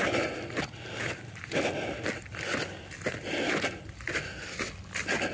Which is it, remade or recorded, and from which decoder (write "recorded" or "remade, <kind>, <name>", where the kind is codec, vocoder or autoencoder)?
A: recorded